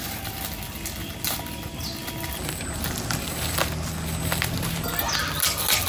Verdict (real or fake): real